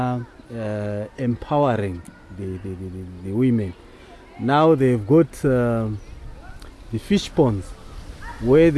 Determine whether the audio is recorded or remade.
recorded